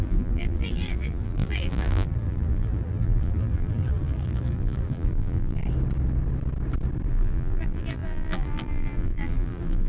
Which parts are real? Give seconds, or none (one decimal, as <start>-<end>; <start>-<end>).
5.6-7.1